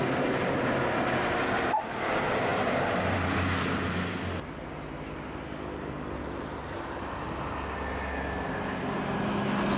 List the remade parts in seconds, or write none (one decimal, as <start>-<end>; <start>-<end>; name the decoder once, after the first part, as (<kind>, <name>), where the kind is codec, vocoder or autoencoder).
none